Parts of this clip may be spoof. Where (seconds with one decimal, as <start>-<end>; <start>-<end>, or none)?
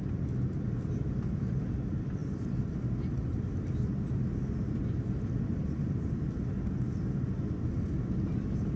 none